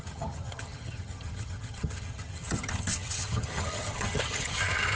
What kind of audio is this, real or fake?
fake